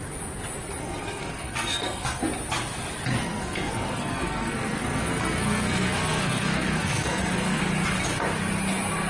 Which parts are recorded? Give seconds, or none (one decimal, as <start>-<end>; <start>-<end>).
0.0-0.8; 2.2-3.2; 7.6-9.1